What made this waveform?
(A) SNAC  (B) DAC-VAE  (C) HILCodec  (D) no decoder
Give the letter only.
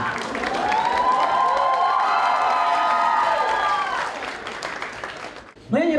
D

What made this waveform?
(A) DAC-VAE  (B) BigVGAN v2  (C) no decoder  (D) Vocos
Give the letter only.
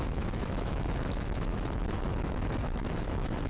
A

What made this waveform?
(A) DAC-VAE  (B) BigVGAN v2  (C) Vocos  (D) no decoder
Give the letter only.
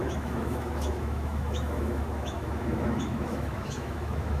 A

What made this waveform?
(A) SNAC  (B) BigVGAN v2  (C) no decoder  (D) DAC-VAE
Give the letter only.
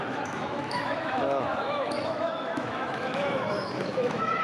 D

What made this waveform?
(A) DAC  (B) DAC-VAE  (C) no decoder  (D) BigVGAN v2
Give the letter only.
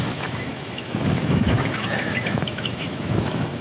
B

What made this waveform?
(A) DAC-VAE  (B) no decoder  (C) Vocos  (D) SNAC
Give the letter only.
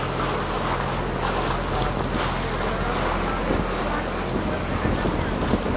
B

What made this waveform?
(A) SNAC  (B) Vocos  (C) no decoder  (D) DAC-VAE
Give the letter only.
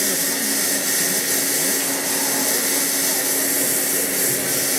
C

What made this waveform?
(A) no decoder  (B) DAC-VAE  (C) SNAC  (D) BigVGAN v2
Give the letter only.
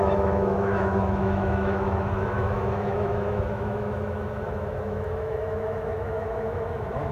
B